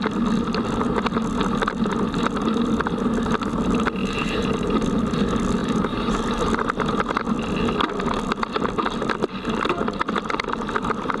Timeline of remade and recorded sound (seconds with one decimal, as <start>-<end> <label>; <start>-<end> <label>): 0.0-4.0 recorded; 4.0-4.5 remade; 4.5-5.6 recorded; 5.6-6.2 remade; 6.2-11.2 recorded

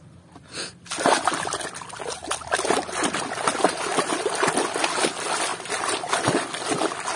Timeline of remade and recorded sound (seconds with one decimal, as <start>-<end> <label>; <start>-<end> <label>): 0.0-5.5 recorded; 5.5-6.1 remade; 6.1-7.2 recorded

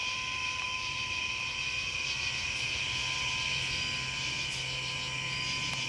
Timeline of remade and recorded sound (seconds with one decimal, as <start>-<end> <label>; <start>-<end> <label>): 0.0-3.3 remade; 3.3-5.9 recorded

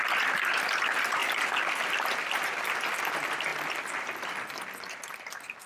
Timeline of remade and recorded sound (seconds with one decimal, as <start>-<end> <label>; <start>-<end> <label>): 0.0-1.2 recorded; 1.2-3.0 remade; 3.0-3.5 recorded; 3.5-5.7 remade

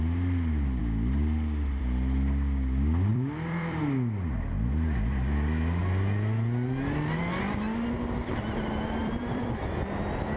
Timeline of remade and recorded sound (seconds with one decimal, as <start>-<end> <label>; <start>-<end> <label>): 0.0-3.1 recorded; 3.1-3.8 remade; 3.8-9.0 recorded; 9.0-9.5 remade; 9.5-10.4 recorded